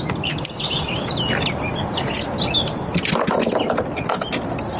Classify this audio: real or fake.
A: real